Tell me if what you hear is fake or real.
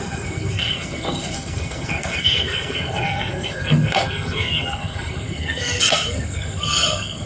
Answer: fake